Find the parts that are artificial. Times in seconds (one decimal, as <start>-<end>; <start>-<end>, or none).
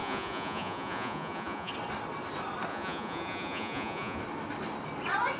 0.0-1.7; 2.7-4.2